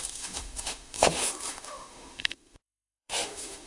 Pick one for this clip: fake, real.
fake